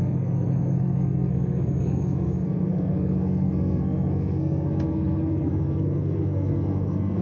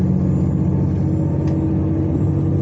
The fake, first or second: first